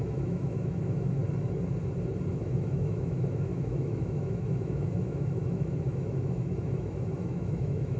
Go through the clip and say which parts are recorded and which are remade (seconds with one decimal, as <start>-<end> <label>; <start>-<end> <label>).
0.0-1.2 remade; 1.2-2.3 recorded; 2.3-8.0 remade